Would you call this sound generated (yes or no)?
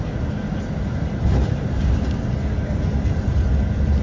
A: no